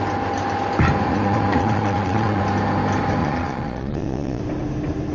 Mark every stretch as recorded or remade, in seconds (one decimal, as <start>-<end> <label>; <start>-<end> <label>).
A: 0.0-1.1 recorded; 1.1-2.4 remade; 2.4-3.2 recorded; 3.2-4.4 remade; 4.4-5.1 recorded